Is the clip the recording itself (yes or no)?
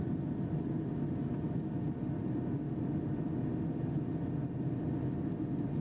yes